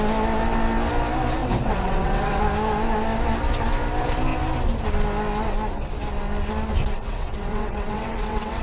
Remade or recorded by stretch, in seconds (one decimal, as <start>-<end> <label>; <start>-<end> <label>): 0.0-1.4 recorded; 1.4-2.4 remade; 2.4-7.0 recorded; 7.0-8.6 remade